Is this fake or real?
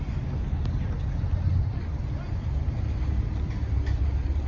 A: real